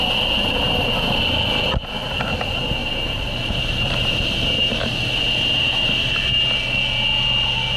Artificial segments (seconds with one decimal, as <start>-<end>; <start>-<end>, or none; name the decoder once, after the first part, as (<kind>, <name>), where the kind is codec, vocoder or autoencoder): 2.8-5.9 (vocoder, BigVGAN v2)